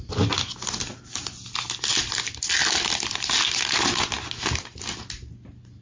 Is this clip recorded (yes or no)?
yes